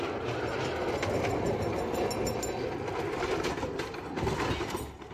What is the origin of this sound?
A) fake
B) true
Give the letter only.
B